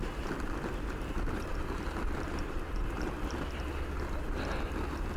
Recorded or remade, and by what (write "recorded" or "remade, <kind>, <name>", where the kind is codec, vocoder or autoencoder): recorded